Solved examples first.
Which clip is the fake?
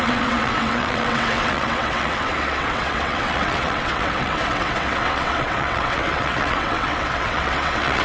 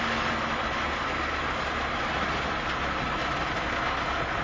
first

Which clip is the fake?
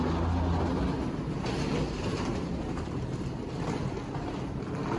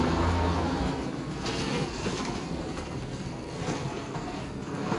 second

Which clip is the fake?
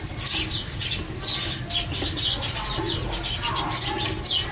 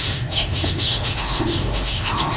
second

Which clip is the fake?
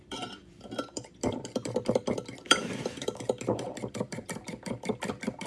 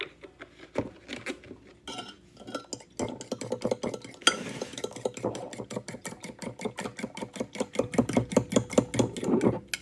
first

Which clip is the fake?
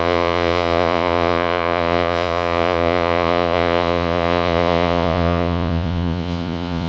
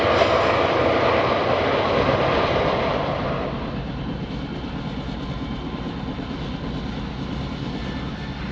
first